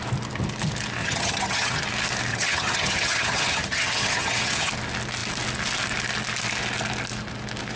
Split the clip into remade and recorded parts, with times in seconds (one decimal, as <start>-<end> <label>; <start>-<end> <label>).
0.0-1.0 recorded; 1.0-1.8 remade; 1.8-2.3 recorded; 2.3-4.7 remade; 4.7-7.8 recorded